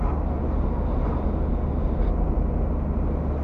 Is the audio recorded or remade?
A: recorded